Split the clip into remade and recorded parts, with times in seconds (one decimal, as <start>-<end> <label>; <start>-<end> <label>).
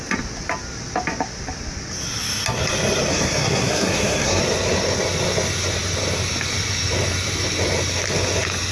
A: 0.0-3.1 recorded; 3.1-4.4 remade; 4.4-8.7 recorded